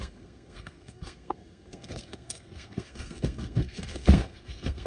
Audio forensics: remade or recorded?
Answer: remade